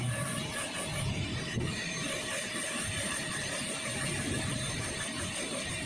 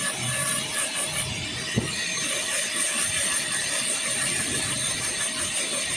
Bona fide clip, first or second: second